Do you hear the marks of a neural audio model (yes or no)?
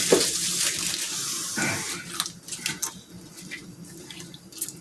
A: no